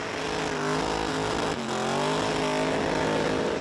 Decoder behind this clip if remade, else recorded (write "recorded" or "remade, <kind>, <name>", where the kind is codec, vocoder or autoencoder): recorded